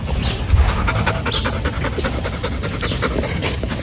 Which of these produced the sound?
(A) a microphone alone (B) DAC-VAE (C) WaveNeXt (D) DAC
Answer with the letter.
A